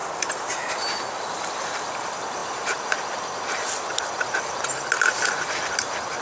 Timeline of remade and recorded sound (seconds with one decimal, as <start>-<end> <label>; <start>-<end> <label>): 0.0-6.2 recorded